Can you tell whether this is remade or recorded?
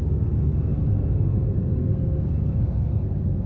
remade